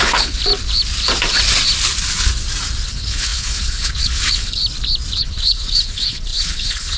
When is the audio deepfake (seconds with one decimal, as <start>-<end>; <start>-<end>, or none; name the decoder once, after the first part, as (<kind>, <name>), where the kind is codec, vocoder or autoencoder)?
0.0-0.4 (codec, HILCodec); 2.9-4.6; 5.2-7.0